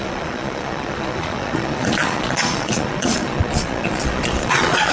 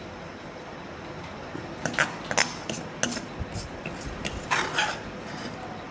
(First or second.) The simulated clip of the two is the first